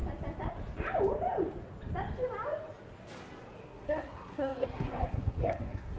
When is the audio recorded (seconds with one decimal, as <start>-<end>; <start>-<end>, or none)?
0.0-3.6